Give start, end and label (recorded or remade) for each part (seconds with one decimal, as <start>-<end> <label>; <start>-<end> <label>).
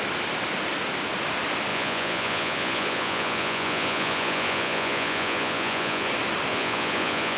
0.0-1.7 recorded; 1.7-6.1 remade; 6.1-6.5 recorded; 6.5-7.4 remade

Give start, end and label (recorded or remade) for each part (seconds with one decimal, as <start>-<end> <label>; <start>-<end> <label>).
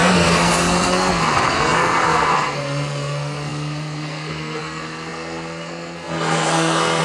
0.0-7.0 remade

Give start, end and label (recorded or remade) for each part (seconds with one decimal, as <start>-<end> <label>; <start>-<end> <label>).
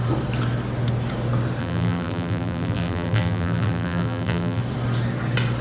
0.0-1.6 recorded; 1.6-4.6 remade; 4.6-5.6 recorded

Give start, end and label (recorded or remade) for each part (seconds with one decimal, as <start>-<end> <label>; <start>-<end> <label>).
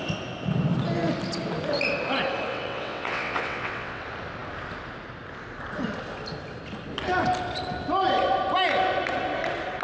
0.0-2.5 recorded; 2.5-4.0 remade; 4.0-9.8 recorded